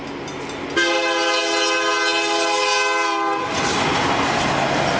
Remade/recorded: recorded